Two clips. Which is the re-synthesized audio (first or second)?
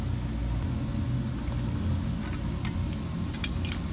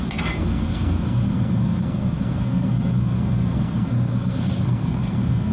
second